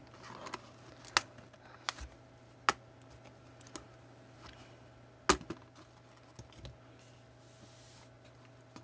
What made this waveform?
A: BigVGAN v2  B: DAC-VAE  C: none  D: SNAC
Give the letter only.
C